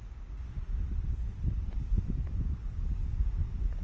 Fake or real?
real